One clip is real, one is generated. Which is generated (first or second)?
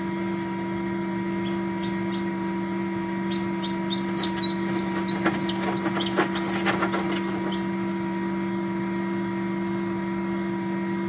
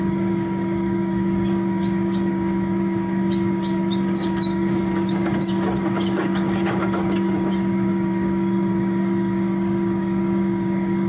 second